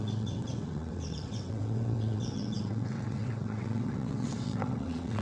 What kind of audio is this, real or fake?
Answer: fake